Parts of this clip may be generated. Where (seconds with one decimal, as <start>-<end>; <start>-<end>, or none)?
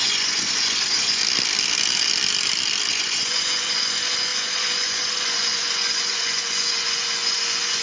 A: 0.0-1.2; 2.9-7.8